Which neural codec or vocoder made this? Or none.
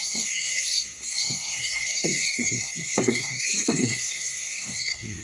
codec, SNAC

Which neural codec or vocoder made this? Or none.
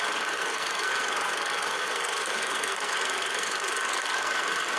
codec, SNAC